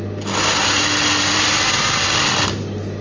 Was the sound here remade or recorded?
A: recorded